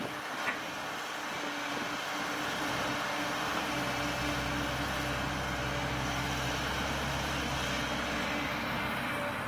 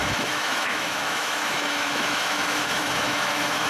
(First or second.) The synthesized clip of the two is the second